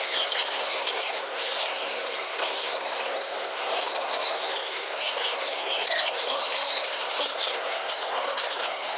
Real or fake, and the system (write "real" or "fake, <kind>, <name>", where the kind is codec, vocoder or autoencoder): fake, codec, SNAC